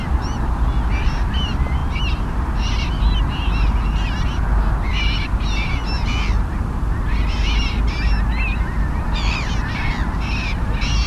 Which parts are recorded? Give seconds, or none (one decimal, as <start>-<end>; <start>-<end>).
0.0-11.1